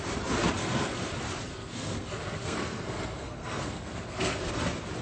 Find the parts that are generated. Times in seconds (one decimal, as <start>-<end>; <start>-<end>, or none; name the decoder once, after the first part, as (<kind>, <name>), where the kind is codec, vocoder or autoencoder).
0.6-1.1 (codec, SNAC); 1.5-4.5

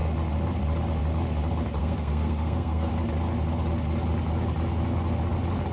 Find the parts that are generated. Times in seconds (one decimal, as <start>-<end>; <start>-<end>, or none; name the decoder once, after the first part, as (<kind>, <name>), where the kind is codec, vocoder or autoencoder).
1.8-2.9 (codec, SNAC)

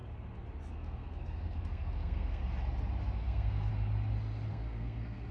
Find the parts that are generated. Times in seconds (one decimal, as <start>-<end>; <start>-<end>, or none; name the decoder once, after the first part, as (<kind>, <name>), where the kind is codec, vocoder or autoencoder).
0.7-2.4 (codec, SNAC); 3.2-3.7; 4.5-5.3